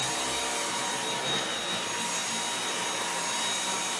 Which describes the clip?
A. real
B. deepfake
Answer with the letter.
A